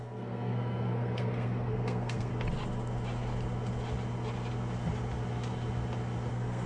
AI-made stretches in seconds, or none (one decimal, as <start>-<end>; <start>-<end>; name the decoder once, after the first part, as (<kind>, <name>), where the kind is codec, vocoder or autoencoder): 0.0-2.3 (codec, SNAC); 6.3-6.7